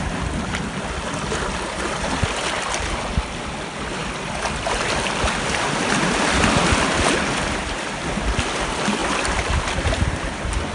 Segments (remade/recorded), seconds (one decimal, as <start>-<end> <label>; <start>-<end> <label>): 0.0-10.7 recorded